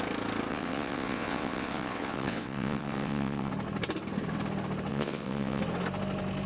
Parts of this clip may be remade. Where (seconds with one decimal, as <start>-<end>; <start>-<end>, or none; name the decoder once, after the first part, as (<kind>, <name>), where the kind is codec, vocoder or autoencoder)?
0.5-3.5 (vocoder, WaveNeXt); 4.9-5.6